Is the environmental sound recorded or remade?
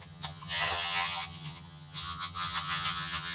remade